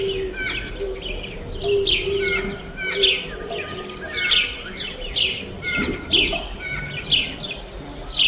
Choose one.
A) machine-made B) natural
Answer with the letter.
B